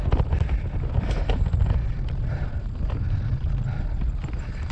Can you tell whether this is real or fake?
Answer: real